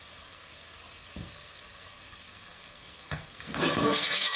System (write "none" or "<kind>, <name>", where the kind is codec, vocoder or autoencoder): codec, SNAC